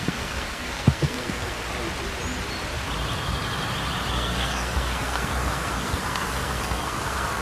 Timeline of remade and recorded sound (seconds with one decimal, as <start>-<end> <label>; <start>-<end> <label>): 0.0-1.6 remade; 1.6-4.1 recorded; 4.1-7.4 remade